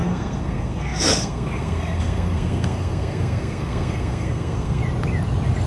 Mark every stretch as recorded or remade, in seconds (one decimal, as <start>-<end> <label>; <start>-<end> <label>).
0.0-4.8 remade; 4.8-5.7 recorded